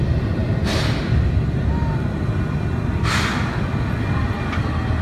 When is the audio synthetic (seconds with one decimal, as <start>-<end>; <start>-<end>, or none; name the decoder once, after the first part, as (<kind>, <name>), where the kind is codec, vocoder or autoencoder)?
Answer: none